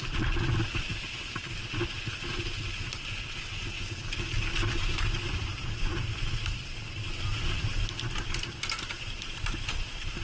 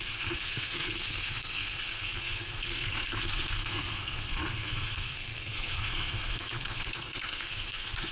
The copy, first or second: second